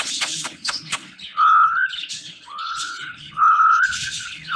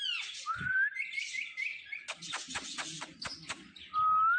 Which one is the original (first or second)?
second